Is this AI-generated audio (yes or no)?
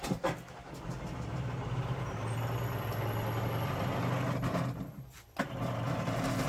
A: no